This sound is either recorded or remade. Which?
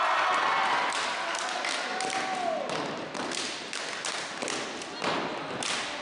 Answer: recorded